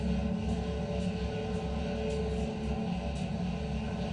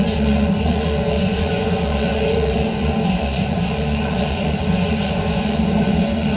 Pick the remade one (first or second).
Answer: second